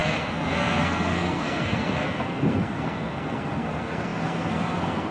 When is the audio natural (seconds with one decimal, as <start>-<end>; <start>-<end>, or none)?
none